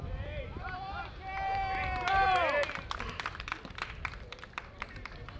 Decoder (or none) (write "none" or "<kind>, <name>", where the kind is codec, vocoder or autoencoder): vocoder, BigVGAN v2